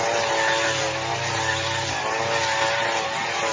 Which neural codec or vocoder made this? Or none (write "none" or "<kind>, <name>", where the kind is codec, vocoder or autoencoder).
none